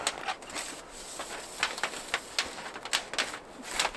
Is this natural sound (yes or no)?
yes